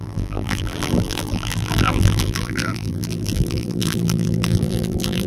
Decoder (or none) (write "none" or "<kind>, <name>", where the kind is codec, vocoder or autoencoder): vocoder, BigVGAN v2